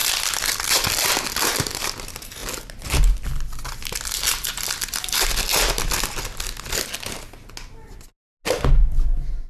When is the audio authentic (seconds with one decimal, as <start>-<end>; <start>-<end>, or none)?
0.0-9.5